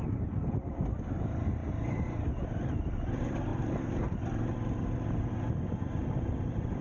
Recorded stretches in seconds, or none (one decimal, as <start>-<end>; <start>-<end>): 1.6-2.4; 3.5-5.4